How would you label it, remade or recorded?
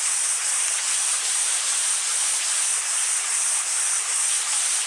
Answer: recorded